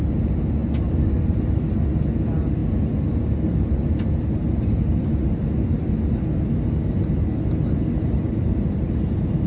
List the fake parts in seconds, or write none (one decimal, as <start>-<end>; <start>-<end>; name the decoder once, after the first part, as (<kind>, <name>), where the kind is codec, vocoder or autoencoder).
none

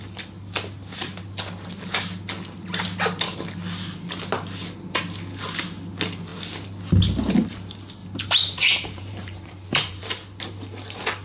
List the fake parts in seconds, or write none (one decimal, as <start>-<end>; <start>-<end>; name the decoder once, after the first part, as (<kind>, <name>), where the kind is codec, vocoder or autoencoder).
8.0-10.0 (vocoder, BigVGAN v2)

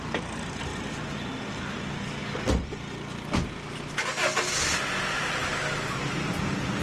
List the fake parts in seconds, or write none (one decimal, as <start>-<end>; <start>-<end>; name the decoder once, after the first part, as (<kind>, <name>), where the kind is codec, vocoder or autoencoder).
none